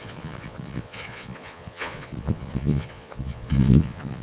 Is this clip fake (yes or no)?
yes